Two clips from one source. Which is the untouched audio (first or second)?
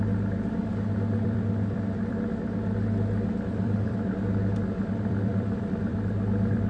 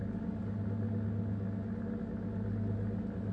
second